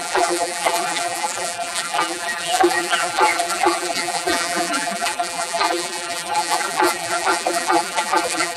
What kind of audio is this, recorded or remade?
remade